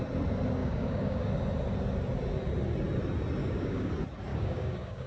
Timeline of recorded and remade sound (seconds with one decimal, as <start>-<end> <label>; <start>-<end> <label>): 0.0-0.6 recorded; 0.6-1.3 remade; 1.3-3.4 recorded; 3.4-3.9 remade; 3.9-4.3 recorded; 4.3-5.1 remade